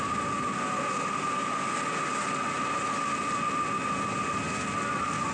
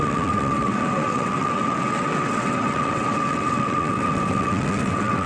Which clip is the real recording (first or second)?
first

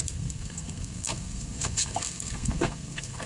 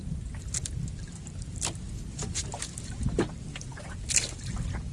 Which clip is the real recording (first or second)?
second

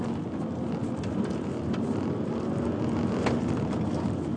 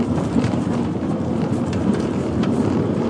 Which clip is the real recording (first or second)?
first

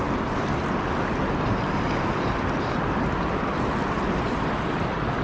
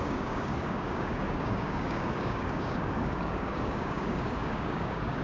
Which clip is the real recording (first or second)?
first